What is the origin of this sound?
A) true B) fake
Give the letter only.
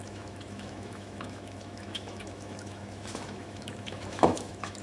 B